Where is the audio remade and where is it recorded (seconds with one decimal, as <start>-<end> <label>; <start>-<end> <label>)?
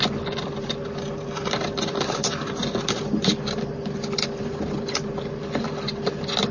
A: 0.0-6.5 recorded